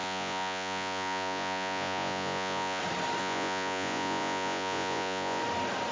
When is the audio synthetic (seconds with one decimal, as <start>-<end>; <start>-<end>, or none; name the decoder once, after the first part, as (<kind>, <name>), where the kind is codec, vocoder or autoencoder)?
0.0-2.8 (vocoder, Vocos); 3.2-5.4